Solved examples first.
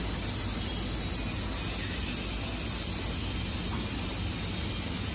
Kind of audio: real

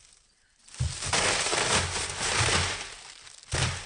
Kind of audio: real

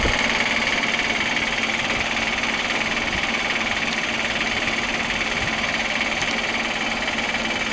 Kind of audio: real